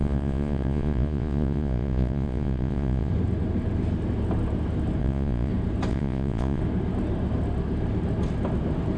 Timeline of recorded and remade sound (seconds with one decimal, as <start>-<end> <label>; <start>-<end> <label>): 0.0-3.1 remade; 3.1-5.0 recorded; 5.0-5.5 remade; 5.5-5.9 recorded; 5.9-6.6 remade; 6.6-9.0 recorded